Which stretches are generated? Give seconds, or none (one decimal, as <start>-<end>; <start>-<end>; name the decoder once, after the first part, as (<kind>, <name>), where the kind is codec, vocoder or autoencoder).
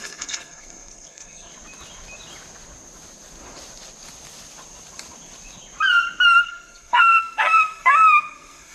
0.0-1.5 (codec, SNAC); 6.4-8.7